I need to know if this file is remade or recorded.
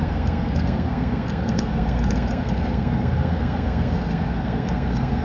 remade